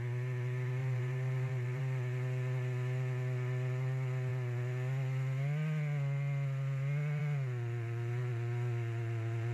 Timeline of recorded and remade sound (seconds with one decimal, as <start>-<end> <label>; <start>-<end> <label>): 0.0-0.8 recorded; 0.8-1.8 remade; 1.8-9.5 recorded